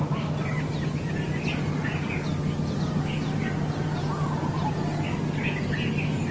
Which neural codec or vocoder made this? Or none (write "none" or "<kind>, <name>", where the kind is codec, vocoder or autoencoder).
none